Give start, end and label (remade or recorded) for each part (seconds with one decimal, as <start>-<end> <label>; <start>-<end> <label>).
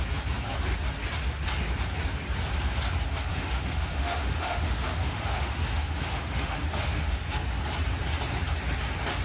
0.0-3.3 recorded; 3.3-7.2 remade; 7.2-9.2 recorded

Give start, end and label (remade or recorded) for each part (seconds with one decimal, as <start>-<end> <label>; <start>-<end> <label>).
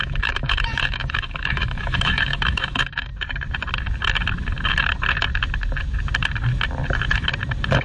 0.0-3.1 remade; 3.1-7.8 recorded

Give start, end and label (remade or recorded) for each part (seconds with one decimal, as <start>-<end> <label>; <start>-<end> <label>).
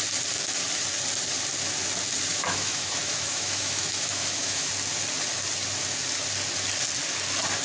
0.0-2.3 recorded; 2.3-4.7 remade; 4.7-7.6 recorded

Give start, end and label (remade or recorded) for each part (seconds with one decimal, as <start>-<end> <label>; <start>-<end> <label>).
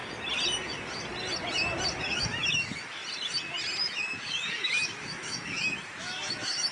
0.0-2.0 recorded; 2.0-3.0 remade; 3.0-3.8 recorded; 3.8-6.7 remade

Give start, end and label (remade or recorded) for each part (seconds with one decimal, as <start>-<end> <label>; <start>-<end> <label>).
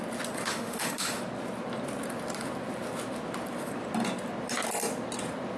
0.0-0.5 recorded; 0.5-1.2 remade; 1.2-5.6 recorded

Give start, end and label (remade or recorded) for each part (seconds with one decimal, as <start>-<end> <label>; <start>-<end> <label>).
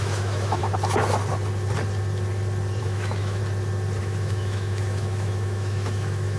0.0-0.6 remade; 0.6-2.8 recorded; 2.8-3.4 remade; 3.4-4.0 recorded; 4.0-6.4 remade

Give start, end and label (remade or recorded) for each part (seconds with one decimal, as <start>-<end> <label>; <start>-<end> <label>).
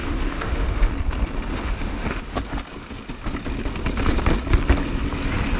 0.0-0.9 remade; 0.9-1.5 recorded; 1.5-2.2 remade; 2.2-5.6 recorded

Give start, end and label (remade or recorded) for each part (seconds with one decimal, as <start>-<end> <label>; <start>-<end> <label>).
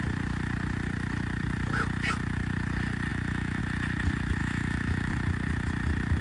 0.0-3.1 recorded; 3.1-3.6 remade; 3.6-4.4 recorded; 4.4-5.1 remade; 5.1-6.2 recorded